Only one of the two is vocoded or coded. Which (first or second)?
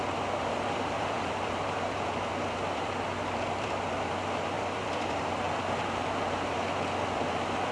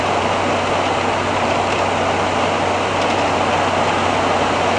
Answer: first